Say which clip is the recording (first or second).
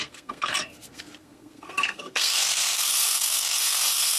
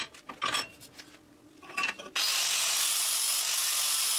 second